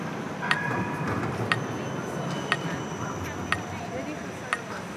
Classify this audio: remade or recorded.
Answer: recorded